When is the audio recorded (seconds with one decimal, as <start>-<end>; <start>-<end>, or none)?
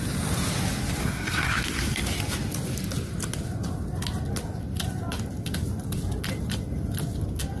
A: 0.0-1.0; 1.6-7.6